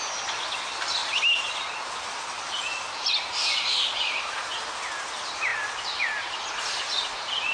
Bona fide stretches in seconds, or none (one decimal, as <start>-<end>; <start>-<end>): 0.0-7.5